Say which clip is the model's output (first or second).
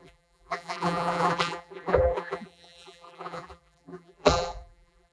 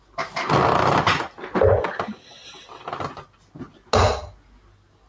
first